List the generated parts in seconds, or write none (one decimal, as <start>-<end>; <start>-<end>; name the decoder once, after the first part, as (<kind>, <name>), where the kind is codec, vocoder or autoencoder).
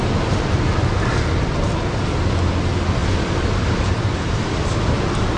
none